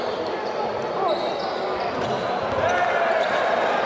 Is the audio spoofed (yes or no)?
no